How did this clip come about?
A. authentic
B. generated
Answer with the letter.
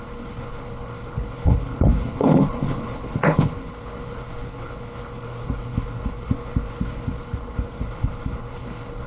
B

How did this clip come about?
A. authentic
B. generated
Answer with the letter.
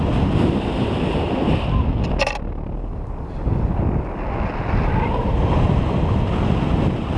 A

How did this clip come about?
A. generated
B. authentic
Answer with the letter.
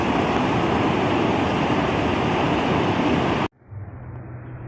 B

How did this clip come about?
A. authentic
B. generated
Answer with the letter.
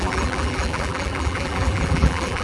B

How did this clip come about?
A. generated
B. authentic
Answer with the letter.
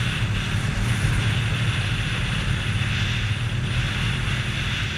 B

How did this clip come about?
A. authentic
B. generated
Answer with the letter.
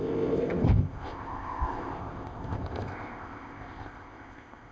B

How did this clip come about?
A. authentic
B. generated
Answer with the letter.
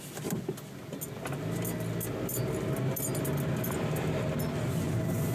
A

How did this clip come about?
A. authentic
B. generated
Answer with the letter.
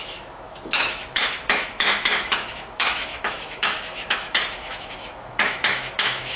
B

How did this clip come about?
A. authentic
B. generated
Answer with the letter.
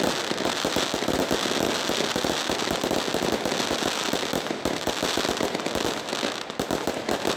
A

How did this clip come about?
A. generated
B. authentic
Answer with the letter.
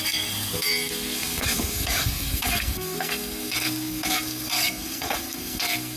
A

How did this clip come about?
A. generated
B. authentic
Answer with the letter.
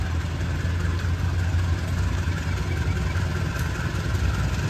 B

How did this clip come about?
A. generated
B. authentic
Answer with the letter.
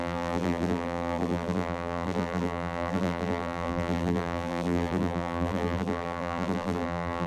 A